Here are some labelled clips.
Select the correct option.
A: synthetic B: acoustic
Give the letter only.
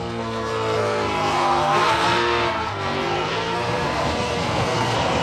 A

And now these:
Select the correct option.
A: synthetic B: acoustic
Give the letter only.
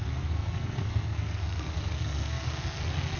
A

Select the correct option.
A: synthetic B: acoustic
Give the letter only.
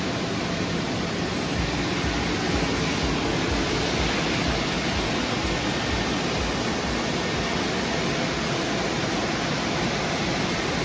B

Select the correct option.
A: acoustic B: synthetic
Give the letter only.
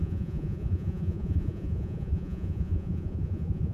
B